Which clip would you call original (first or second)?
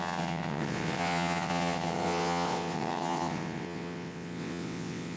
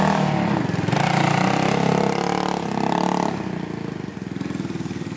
second